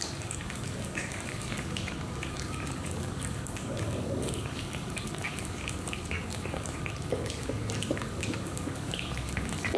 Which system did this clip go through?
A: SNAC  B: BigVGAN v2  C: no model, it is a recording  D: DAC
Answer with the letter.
D